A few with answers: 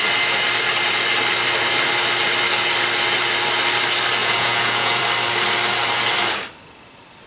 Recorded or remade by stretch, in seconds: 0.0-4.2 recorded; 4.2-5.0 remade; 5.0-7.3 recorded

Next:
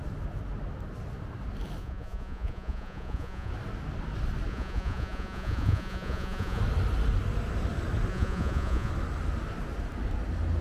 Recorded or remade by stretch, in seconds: 0.0-1.8 recorded; 1.8-3.5 remade; 3.5-4.5 recorded; 4.5-6.6 remade; 6.6-8.1 recorded; 8.1-8.9 remade; 8.9-10.6 recorded

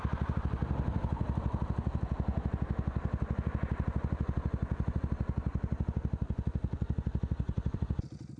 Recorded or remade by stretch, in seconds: 0.0-0.6 remade; 0.6-1.6 recorded; 1.6-2.3 remade; 2.3-6.3 recorded; 6.3-8.4 remade

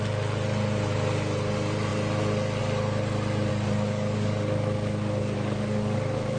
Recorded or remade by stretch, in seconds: 0.0-3.5 recorded; 3.5-6.4 remade

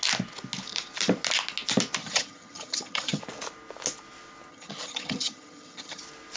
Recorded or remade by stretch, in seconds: 0.0-2.0 recorded; 2.0-3.2 remade; 3.2-4.5 recorded; 4.5-6.0 remade; 6.0-6.4 recorded

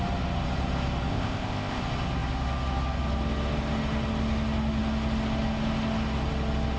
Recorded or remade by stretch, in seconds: 0.0-1.1 recorded; 1.1-1.8 remade; 1.8-6.8 recorded

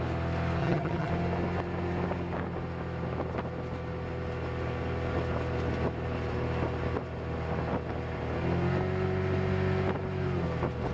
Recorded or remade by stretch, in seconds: 0.0-0.6 recorded; 0.6-1.1 remade; 1.1-10.9 recorded